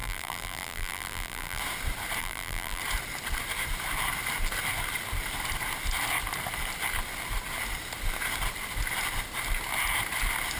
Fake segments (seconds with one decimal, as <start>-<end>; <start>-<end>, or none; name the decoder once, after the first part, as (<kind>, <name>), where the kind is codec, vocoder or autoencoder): 0.0-1.6 (vocoder, BigVGAN v2); 2.2-2.8